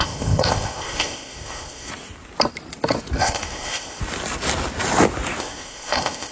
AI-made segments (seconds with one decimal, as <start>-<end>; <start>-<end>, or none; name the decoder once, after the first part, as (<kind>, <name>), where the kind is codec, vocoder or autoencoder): 0.0-1.9 (codec, ZipCodec); 3.2-4.0; 5.4-6.3